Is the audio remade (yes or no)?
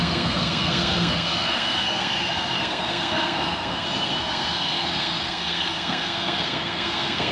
yes